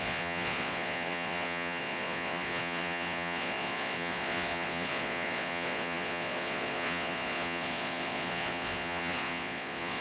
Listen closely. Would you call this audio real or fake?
fake